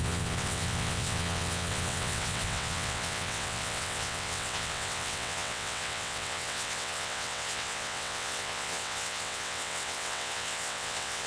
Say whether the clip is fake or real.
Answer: fake